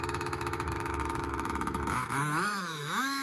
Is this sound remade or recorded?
remade